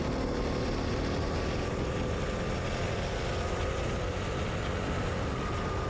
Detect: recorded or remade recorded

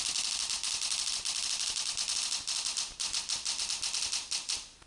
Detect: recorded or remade recorded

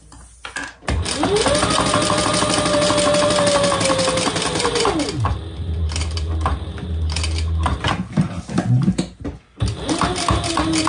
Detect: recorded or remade recorded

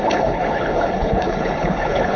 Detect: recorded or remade remade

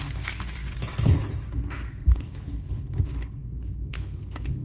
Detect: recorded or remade remade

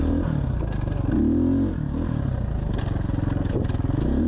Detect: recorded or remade recorded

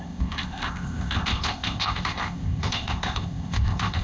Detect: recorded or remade remade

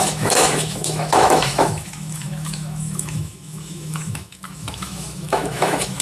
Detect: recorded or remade remade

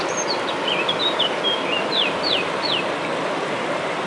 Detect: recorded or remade recorded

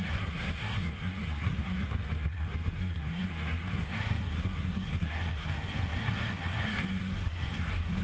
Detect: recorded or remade remade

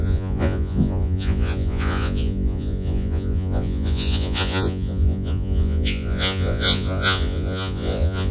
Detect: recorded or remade remade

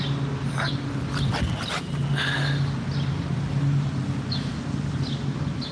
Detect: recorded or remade recorded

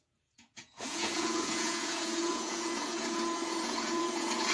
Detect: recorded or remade remade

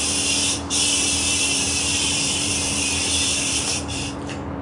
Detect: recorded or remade remade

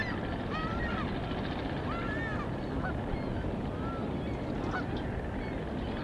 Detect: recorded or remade recorded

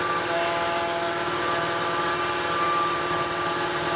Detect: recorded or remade recorded